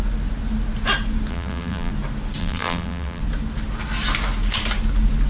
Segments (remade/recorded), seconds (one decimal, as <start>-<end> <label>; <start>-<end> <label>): 0.0-1.3 recorded; 1.3-1.9 remade; 1.9-2.4 recorded; 2.4-3.2 remade; 3.2-5.3 recorded